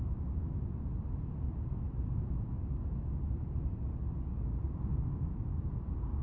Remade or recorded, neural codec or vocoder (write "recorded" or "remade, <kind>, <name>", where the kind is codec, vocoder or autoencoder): recorded